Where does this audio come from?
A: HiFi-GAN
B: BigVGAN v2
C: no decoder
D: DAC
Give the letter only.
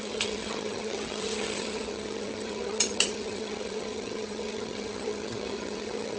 A